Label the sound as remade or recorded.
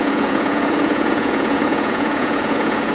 remade